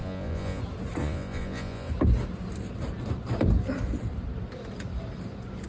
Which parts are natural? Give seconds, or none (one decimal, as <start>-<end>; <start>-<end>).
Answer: 0.6-1.0; 1.9-5.7